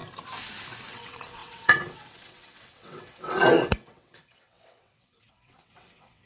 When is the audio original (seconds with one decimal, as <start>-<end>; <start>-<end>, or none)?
0.0-0.9